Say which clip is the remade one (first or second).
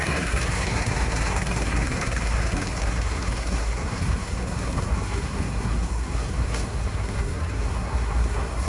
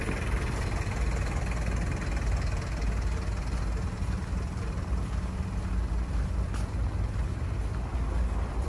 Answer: first